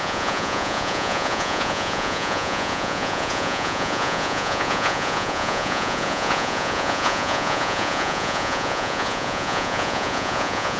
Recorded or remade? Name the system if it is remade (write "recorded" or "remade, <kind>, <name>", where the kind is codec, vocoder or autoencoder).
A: remade, vocoder, Vocos